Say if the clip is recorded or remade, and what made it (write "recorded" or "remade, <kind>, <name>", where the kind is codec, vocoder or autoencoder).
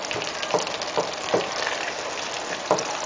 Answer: recorded